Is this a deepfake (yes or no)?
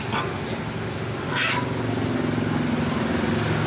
no